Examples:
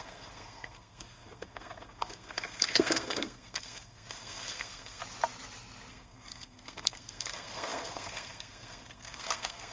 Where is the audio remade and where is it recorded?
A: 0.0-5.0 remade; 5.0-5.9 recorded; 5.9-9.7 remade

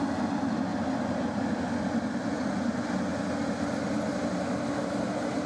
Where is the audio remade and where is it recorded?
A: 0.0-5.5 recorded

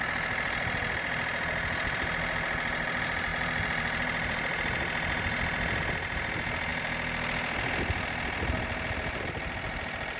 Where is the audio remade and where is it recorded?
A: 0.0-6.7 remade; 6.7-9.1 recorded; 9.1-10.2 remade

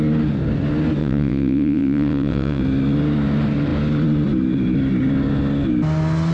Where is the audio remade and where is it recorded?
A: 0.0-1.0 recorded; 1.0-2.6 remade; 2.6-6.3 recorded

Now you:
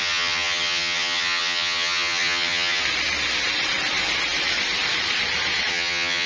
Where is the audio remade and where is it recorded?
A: 0.0-2.8 remade; 2.8-5.7 recorded; 5.7-6.3 remade

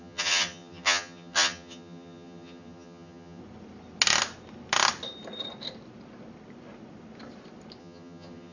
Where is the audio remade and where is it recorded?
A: 0.0-3.4 remade; 3.4-7.8 recorded; 7.8-8.5 remade

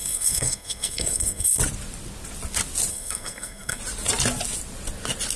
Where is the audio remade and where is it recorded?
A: 0.0-1.6 remade; 1.6-2.9 recorded; 2.9-3.8 remade; 3.8-5.4 recorded

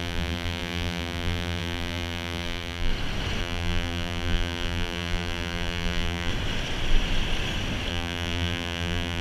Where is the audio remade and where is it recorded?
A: 0.0-2.9 remade; 2.9-3.4 recorded; 3.4-6.3 remade; 6.3-7.9 recorded; 7.9-9.2 remade